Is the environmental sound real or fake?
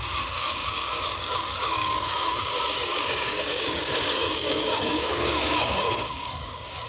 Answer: fake